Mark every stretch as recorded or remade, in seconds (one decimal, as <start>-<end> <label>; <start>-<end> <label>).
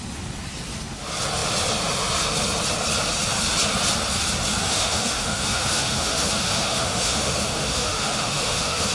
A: 0.0-4.6 recorded; 4.6-8.9 remade